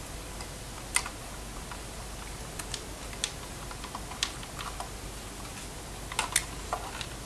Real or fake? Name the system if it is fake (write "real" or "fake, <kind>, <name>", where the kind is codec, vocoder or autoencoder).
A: real